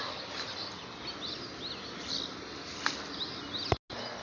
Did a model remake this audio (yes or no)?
no